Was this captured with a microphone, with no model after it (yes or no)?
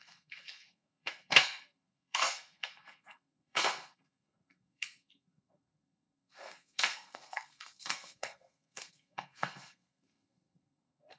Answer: no